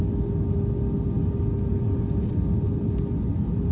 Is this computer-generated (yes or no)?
no